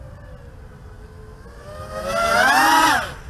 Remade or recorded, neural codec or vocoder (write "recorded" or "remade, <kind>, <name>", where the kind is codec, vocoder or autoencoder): recorded